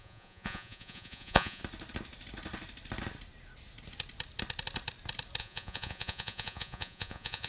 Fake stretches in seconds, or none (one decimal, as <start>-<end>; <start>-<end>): 0.0-1.6; 5.4-7.5